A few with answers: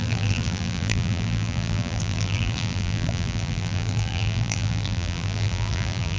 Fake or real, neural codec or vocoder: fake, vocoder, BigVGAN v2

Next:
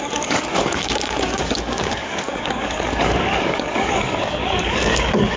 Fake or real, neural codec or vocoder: fake, codec, DAC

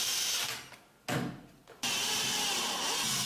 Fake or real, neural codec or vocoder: real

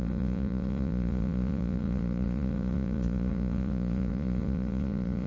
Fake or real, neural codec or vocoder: fake, vocoder, Vocos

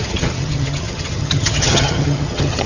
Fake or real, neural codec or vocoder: fake, vocoder, HiFi-GAN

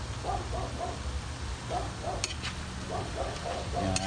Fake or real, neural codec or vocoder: real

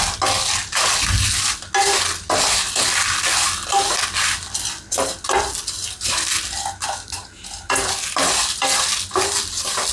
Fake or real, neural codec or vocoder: real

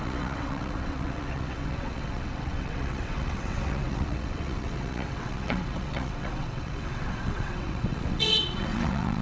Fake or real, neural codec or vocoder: fake, vocoder, WaveNeXt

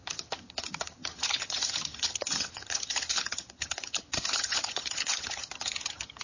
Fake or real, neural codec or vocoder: fake, vocoder, HiFi-GAN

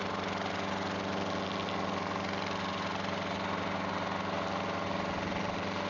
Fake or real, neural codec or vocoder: real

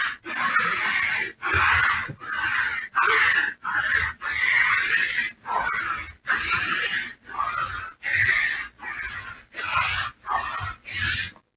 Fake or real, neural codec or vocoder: real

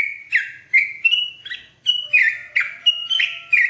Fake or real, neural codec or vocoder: real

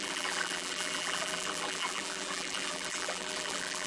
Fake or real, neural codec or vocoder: fake, vocoder, BigVGAN v2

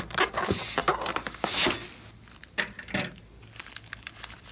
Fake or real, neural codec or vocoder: real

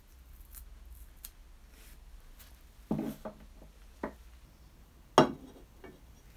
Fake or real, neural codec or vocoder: real